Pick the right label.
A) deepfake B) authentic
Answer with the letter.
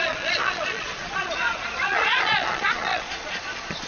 A